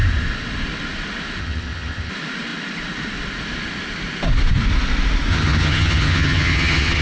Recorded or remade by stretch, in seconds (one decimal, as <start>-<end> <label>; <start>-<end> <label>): 0.0-1.4 recorded; 1.4-2.1 remade; 2.1-5.3 recorded; 5.3-7.0 remade